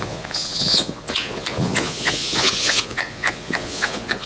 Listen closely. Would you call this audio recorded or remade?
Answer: remade